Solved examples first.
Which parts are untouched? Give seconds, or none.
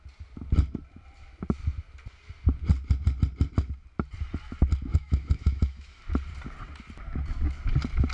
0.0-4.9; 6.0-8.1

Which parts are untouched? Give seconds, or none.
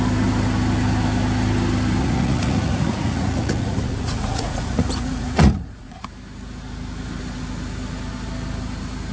0.0-2.0; 6.0-9.1